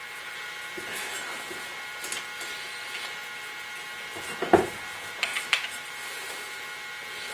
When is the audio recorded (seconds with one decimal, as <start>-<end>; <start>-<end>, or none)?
0.0-5.3; 5.9-7.3